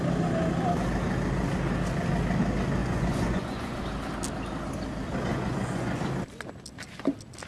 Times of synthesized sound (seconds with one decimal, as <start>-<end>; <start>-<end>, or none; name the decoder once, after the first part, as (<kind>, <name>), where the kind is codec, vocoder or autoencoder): 2.8-3.8 (vocoder, Vocos); 5.3-6.0